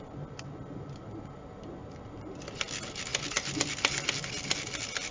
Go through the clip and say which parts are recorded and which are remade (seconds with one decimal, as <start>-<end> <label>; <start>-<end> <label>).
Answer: 0.0-5.1 recorded